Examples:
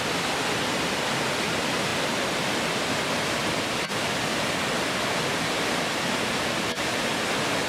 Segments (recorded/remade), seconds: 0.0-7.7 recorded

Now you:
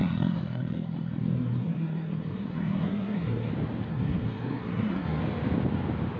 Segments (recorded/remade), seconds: 0.0-3.5 remade; 3.5-3.9 recorded; 3.9-5.2 remade; 5.2-6.2 recorded

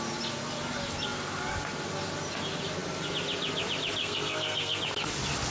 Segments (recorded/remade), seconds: 0.0-4.0 recorded; 4.0-4.8 remade; 4.8-5.5 recorded

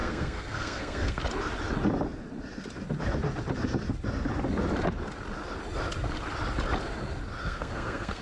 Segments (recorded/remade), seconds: 0.0-1.2 remade; 1.2-7.4 recorded; 7.4-8.2 remade

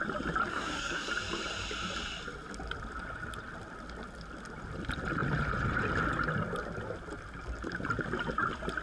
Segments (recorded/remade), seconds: 0.0-0.5 recorded; 0.5-1.1 remade; 1.1-8.8 recorded

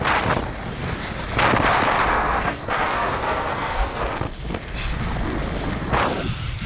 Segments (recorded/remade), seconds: 0.0-2.1 recorded; 2.1-4.0 remade; 4.0-6.7 recorded

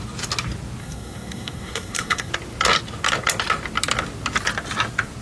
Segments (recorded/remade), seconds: 0.0-0.8 recorded; 0.8-2.3 remade; 2.3-5.2 recorded